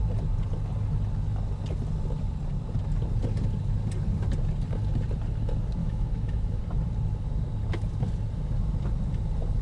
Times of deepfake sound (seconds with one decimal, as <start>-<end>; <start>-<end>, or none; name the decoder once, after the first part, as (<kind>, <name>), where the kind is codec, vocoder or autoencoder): 5.8-6.6 (autoencoder, DAC-VAE)